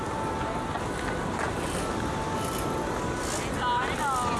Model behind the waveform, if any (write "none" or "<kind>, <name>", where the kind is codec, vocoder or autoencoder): none